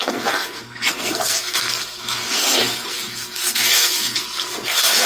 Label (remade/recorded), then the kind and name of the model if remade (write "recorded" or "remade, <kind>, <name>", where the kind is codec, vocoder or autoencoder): remade, codec, SNAC